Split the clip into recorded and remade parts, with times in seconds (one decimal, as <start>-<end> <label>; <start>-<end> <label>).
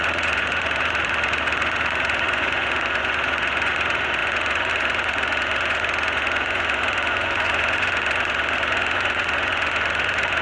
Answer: 0.0-10.4 remade